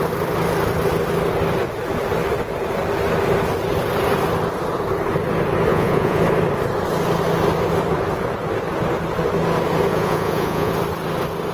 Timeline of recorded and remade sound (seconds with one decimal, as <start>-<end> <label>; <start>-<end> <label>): 0.0-5.7 recorded; 5.7-6.2 remade; 6.2-9.9 recorded; 9.9-10.7 remade; 10.7-11.5 recorded